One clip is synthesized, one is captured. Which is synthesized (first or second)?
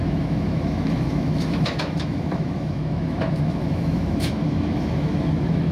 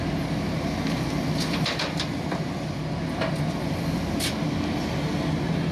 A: first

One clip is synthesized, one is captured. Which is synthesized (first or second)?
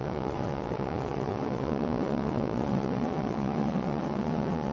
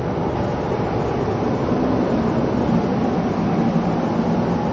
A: first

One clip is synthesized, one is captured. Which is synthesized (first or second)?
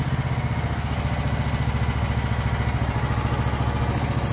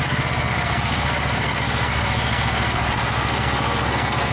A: second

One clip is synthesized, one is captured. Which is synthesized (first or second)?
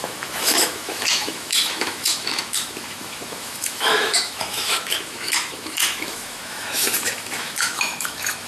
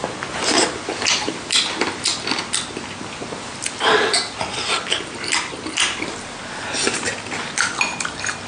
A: first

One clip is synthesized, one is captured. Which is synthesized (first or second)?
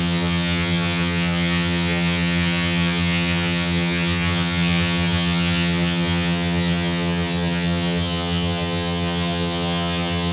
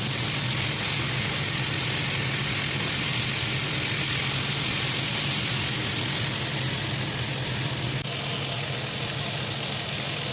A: first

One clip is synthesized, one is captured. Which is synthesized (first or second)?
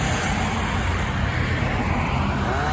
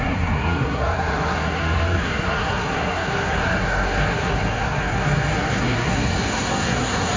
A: second